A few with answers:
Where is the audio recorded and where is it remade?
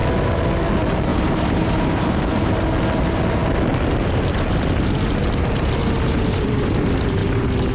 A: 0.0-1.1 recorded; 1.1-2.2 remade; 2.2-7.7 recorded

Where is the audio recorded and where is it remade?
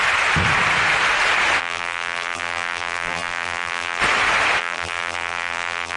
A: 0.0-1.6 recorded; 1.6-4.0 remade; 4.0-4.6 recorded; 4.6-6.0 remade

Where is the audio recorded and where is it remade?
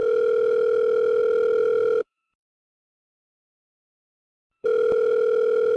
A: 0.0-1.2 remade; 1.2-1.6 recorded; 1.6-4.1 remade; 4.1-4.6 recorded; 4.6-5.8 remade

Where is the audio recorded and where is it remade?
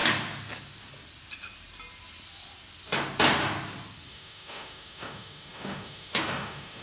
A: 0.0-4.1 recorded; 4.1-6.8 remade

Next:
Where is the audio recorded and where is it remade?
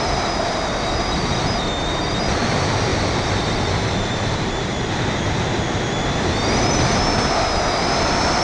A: 0.0-2.9 recorded; 2.9-4.8 remade; 4.8-8.4 recorded